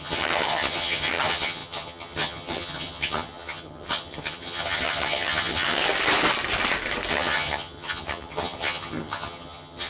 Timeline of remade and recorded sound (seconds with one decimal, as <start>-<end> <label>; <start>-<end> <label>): 0.0-5.8 remade; 5.8-7.1 recorded; 7.1-9.9 remade